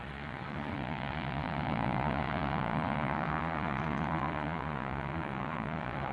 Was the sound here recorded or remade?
remade